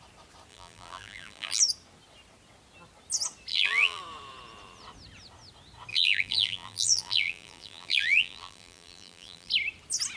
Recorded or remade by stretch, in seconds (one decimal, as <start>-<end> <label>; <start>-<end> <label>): 0.0-0.5 recorded; 0.5-1.6 remade; 1.6-3.5 recorded; 3.5-4.0 remade; 4.0-5.9 recorded; 5.9-9.5 remade; 9.5-10.2 recorded